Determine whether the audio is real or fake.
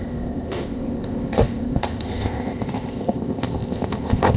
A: fake